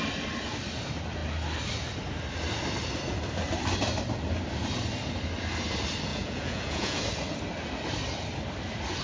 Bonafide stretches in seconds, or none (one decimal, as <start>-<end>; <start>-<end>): 0.0-6.1; 7.0-9.0

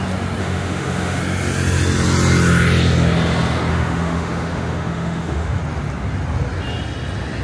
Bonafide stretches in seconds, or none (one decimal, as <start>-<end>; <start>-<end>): 0.0-0.4; 1.2-3.7; 5.6-7.4

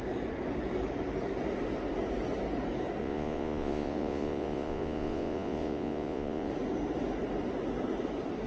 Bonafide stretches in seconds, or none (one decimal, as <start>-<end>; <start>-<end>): 0.0-3.0; 6.5-8.5

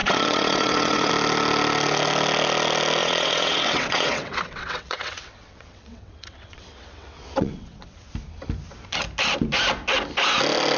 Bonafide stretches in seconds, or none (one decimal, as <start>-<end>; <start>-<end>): 1.1-3.0; 8.1-10.8

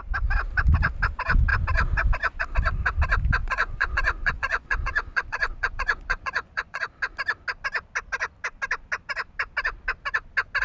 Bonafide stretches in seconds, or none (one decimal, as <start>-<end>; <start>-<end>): 0.0-3.4; 6.8-10.6

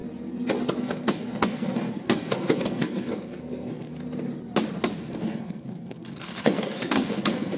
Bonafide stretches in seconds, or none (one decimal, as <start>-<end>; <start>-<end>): 0.0-0.8; 3.9-5.1

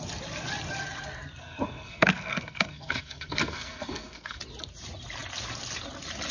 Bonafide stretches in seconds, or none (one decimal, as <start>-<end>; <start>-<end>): 0.0-1.4; 4.4-6.3

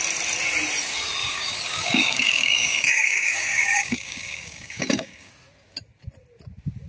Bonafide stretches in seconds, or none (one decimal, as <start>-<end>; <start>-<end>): 0.0-1.2; 5.3-6.9